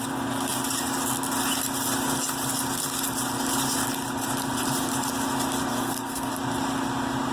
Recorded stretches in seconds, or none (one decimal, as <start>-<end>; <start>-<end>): 0.0-5.7; 6.3-7.3